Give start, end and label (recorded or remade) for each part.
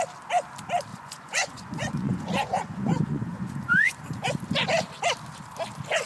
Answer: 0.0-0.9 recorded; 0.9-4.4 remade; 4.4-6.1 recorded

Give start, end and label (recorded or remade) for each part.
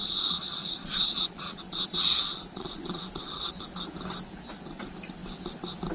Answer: 0.0-3.5 remade; 3.5-5.9 recorded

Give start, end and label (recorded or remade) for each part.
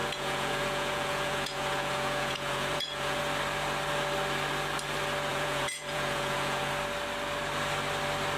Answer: 0.0-3.2 remade; 3.2-5.3 recorded; 5.3-6.7 remade; 6.7-8.4 recorded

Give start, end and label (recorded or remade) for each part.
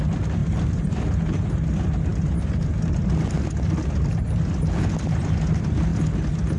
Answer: 0.0-6.6 recorded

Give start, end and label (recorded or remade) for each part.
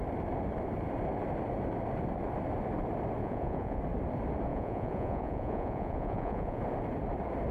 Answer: 0.0-3.2 recorded; 3.2-3.8 remade; 3.8-4.5 recorded; 4.5-6.6 remade; 6.6-7.5 recorded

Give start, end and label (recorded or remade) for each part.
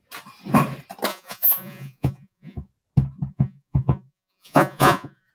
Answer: 0.0-1.1 recorded; 1.1-2.7 remade; 2.7-3.3 recorded; 3.3-5.3 remade